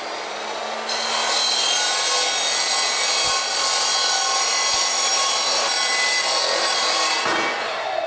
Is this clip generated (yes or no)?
no